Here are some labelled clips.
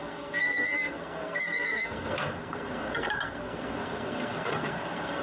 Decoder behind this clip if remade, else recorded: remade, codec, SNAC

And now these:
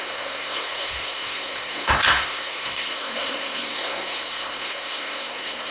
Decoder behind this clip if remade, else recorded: remade, codec, SNAC